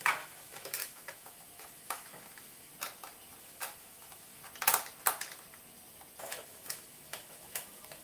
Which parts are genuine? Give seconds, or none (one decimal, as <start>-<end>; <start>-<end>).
2.7-3.4; 4.4-6.2